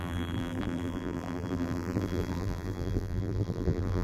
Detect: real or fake fake